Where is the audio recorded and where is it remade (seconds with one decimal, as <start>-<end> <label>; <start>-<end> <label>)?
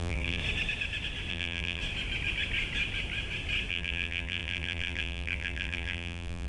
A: 0.0-0.4 remade; 0.4-1.3 recorded; 1.3-1.8 remade; 1.8-3.7 recorded; 3.7-6.5 remade